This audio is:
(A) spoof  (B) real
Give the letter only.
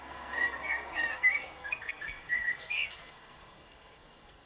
A